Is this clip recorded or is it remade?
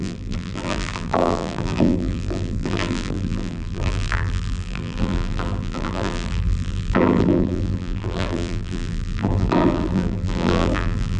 remade